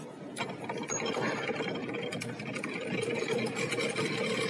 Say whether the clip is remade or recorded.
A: recorded